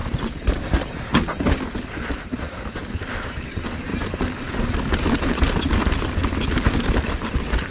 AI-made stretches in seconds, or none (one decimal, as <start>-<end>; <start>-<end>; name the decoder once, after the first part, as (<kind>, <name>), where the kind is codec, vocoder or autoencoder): 0.0-3.9 (vocoder, BigVGAN v2)